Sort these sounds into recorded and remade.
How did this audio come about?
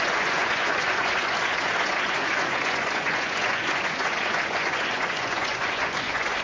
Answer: remade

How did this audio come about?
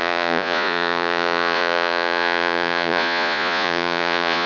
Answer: remade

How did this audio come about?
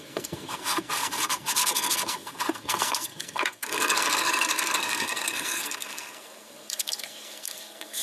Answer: remade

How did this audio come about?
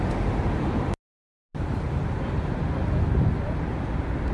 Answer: recorded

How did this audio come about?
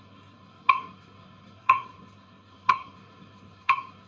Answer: remade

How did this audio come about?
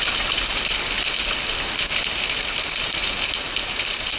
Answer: recorded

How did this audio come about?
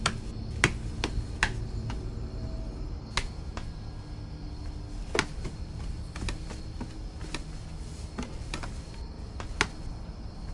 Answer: recorded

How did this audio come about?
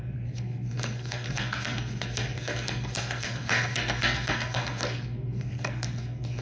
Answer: remade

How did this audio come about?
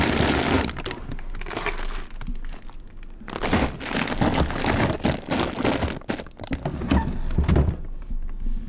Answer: recorded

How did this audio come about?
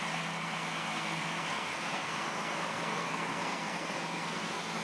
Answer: remade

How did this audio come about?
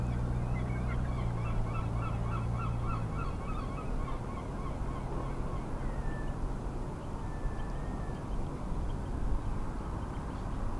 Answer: recorded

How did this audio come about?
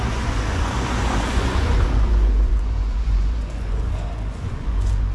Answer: remade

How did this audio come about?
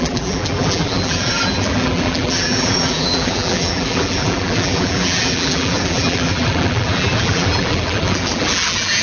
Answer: remade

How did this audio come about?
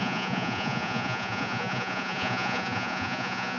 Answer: remade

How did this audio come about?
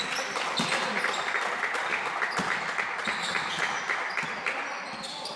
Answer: recorded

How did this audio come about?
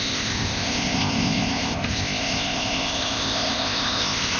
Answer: remade